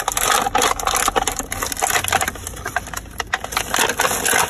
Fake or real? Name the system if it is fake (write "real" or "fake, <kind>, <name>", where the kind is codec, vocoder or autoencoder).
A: real